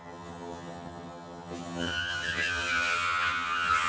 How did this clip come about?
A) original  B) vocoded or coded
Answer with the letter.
B